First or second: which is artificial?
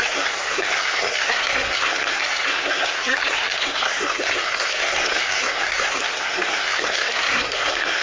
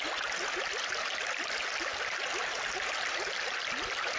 first